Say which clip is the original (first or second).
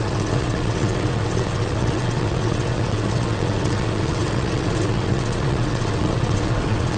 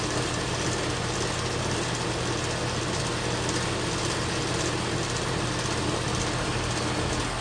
second